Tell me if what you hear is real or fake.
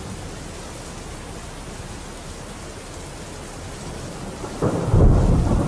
real